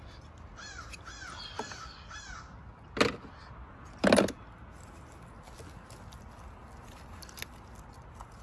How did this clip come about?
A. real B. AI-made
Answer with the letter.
A